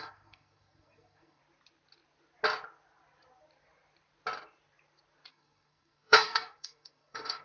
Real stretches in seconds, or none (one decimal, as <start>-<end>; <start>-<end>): 1.4-5.3